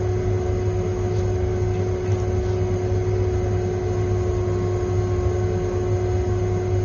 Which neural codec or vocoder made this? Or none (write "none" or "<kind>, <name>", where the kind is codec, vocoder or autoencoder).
none